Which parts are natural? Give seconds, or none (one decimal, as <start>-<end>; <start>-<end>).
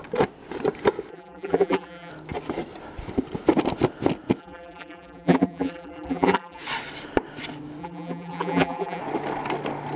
0.0-1.1; 2.1-4.4; 6.6-7.8; 9.0-10.0